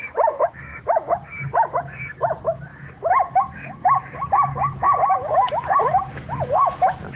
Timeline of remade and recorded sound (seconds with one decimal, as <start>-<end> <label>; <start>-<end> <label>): 0.0-7.2 remade